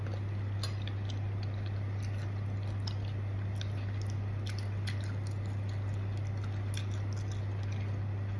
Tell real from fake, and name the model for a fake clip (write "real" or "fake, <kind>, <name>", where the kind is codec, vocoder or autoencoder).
real